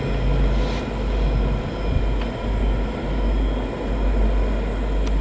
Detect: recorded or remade recorded